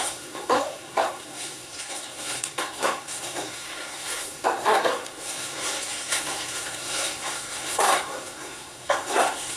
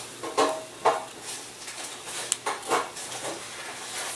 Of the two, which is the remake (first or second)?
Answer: first